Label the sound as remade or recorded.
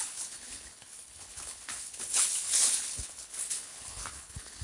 remade